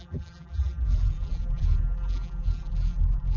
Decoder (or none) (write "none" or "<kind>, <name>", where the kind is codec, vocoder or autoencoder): vocoder, BigVGAN v2